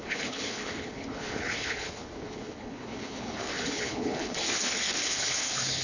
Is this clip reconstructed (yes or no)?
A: yes